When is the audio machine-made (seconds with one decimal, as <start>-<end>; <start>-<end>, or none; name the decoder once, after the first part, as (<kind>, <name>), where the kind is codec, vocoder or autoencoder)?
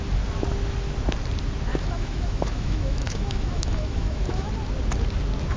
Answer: 1.7-4.5 (autoencoder, DAC-VAE)